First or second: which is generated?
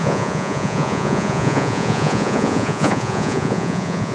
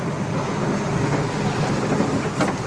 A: first